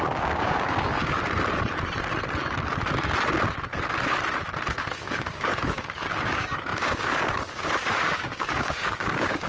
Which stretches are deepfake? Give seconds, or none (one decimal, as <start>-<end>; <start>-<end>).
0.0-1.2; 4.7-9.5